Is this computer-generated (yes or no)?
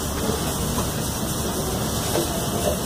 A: no